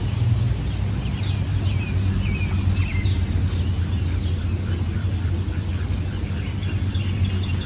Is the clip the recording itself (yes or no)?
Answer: yes